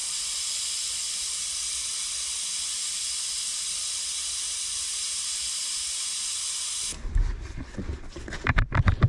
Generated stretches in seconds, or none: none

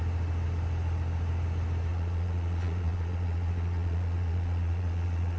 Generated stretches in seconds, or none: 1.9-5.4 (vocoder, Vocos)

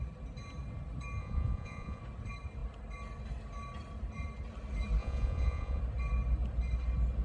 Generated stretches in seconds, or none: 1.2-2.0 (vocoder, Vocos); 5.0-5.8

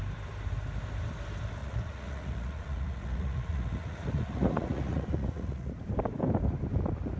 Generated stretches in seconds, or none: 1.6-5.7 (vocoder, Vocos)